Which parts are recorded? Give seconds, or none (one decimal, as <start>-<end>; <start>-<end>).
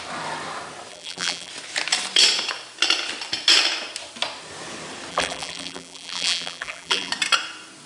0.0-0.9; 1.5-5.1; 7.1-7.9